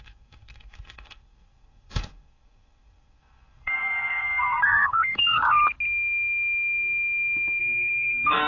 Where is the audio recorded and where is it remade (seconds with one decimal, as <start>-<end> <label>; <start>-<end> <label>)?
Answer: 0.0-5.6 remade; 5.6-7.6 recorded; 7.6-8.5 remade